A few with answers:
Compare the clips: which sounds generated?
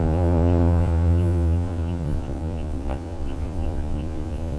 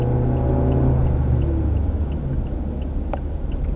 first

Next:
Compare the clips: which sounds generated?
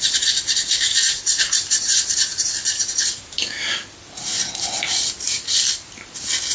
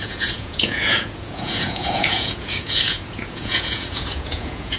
second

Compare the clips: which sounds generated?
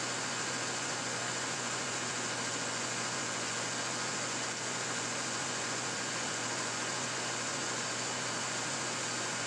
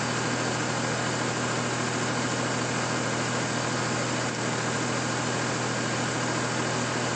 first